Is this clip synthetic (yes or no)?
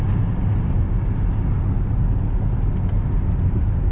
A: no